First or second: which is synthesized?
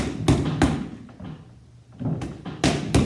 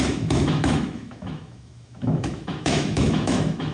second